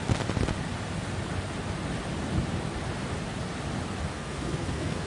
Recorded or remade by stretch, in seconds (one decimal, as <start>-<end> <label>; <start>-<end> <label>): 0.0-4.1 recorded; 4.1-5.1 remade